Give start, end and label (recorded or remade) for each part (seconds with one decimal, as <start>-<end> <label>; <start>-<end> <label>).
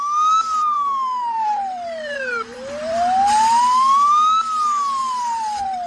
0.0-0.6 recorded; 0.6-4.1 remade; 4.1-5.0 recorded; 5.0-5.9 remade